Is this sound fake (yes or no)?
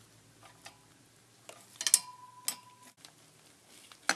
no